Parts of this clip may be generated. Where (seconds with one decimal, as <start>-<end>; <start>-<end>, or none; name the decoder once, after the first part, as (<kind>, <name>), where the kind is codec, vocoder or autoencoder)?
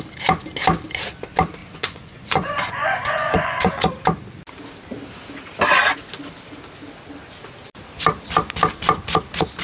1.6-3.7 (vocoder, Vocos)